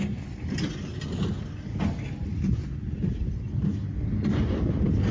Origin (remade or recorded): recorded